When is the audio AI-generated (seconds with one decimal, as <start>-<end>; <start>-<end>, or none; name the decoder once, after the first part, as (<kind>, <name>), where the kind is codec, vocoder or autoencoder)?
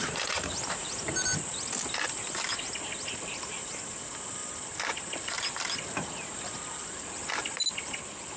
none